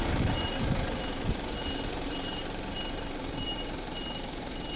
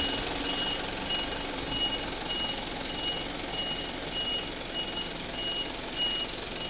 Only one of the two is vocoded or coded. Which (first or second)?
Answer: first